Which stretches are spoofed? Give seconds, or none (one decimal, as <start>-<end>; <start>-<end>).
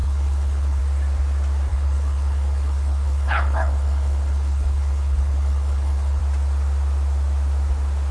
0.0-0.8; 1.7-6.2